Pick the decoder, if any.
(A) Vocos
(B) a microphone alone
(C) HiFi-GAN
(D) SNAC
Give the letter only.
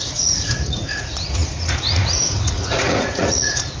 A